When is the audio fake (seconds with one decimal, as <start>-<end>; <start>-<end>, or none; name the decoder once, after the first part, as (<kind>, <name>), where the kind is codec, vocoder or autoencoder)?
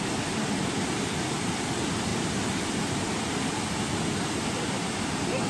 none